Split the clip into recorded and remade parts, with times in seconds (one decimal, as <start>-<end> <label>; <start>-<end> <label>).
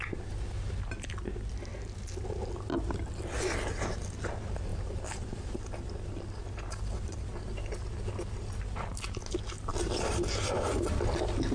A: 0.0-4.7 recorded; 4.7-6.2 remade; 6.2-11.5 recorded